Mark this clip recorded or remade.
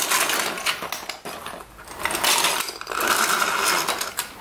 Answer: recorded